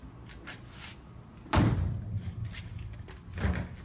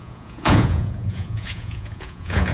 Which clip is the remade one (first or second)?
second